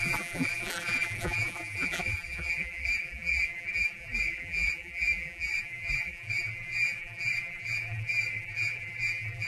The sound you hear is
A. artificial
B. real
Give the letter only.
A